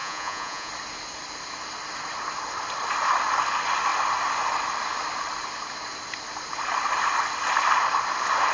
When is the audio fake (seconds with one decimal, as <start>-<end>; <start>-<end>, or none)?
0.0-0.7